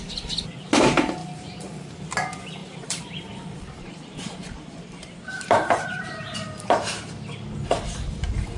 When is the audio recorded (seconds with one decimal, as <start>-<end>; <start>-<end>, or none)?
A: 0.0-1.2; 2.0-2.6; 7.1-8.6